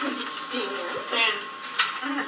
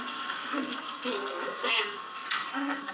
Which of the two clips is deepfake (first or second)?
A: second